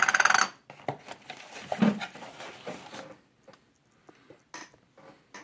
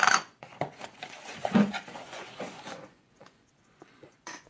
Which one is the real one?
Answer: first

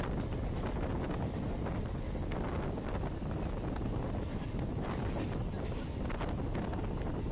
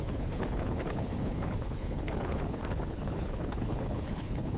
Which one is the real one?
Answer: first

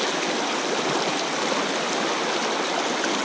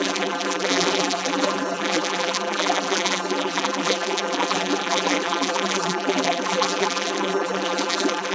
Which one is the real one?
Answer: first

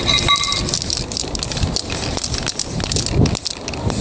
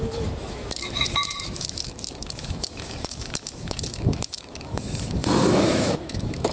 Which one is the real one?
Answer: first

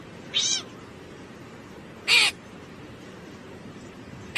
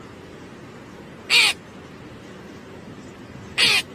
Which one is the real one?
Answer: second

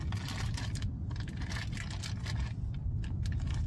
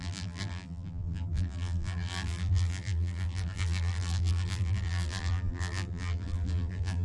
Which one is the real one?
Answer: first